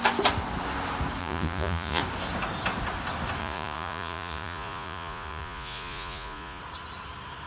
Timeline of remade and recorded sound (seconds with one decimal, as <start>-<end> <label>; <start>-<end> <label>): 0.0-1.2 recorded; 1.2-2.0 remade; 2.0-3.4 recorded; 3.4-6.6 remade; 6.6-7.5 recorded